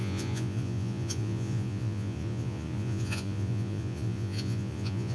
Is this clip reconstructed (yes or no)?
yes